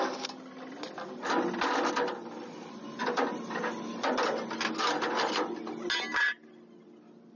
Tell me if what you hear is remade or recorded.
recorded